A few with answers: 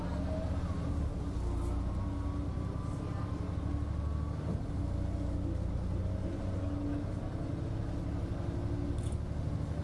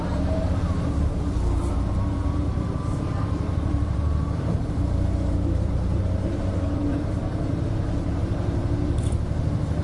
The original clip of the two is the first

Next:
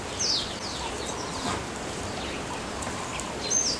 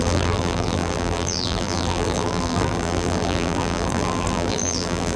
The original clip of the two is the first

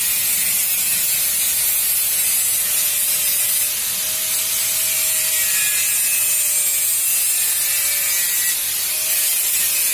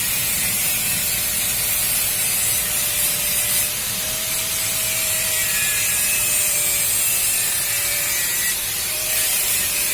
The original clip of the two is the first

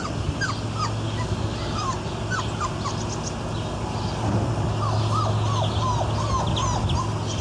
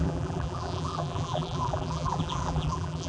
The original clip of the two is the first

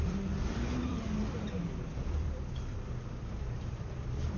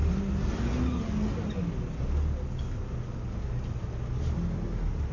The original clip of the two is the second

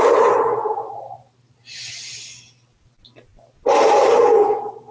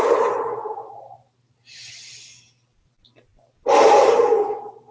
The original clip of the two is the first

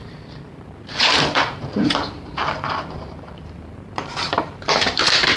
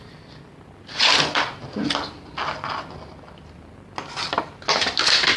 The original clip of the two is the second